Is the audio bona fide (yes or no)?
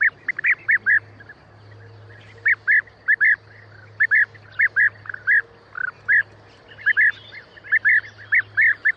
yes